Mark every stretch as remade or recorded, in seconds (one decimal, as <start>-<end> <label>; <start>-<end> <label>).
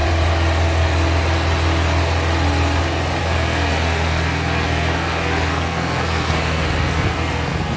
0.0-3.2 recorded; 3.2-7.8 remade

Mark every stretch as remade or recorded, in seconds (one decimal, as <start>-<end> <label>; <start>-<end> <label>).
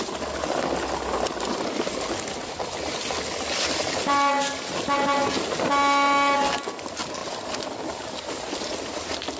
0.0-9.4 recorded